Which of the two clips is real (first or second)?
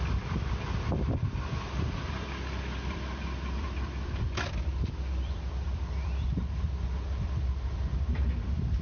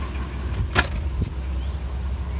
second